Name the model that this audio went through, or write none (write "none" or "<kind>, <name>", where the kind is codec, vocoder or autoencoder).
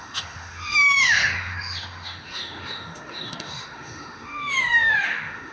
autoencoder, DAC-VAE